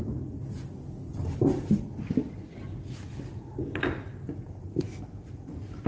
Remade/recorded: recorded